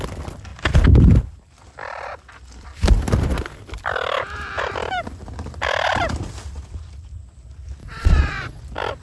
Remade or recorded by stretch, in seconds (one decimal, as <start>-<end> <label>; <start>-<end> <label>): 0.0-7.8 recorded; 7.8-8.6 remade; 8.6-9.0 recorded